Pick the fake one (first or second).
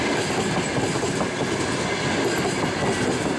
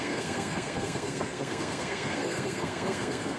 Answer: second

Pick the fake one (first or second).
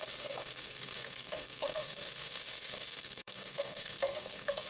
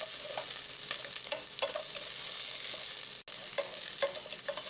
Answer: first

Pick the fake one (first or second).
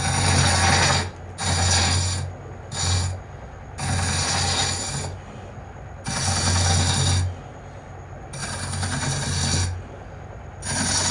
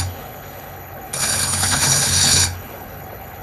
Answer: second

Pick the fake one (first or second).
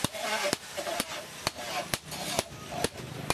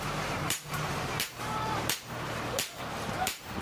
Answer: second